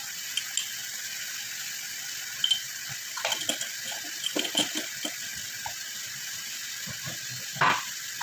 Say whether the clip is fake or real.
real